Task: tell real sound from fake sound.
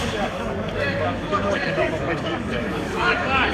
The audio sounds fake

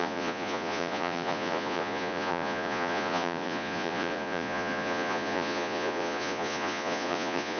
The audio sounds fake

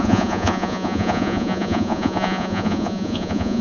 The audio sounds fake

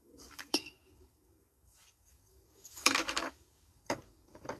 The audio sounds fake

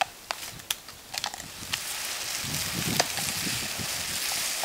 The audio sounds real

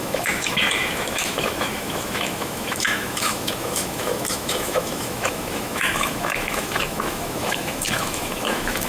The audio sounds fake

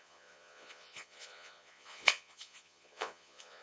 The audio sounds fake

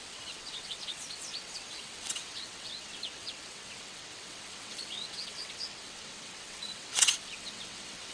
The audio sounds fake